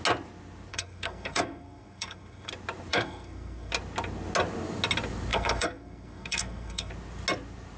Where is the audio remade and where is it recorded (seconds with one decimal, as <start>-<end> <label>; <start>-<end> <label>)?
0.0-0.7 recorded; 0.7-2.5 remade; 2.5-2.9 recorded; 2.9-3.7 remade; 3.7-5.3 recorded; 5.3-6.9 remade; 6.9-7.8 recorded